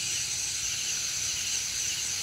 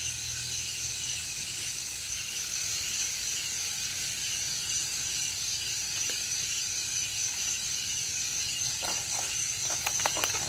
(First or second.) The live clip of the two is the first